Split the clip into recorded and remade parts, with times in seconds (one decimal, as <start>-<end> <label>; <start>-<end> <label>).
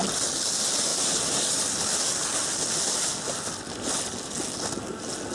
0.0-5.3 recorded